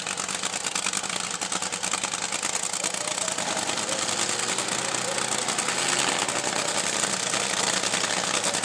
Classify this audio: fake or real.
real